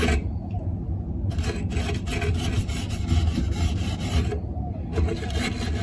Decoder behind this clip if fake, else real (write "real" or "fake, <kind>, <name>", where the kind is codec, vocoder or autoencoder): real